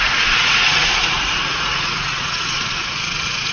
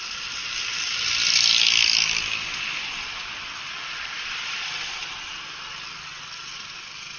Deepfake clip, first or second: first